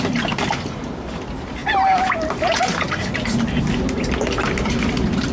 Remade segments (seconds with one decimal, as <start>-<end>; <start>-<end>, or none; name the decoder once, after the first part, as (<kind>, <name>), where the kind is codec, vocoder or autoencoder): none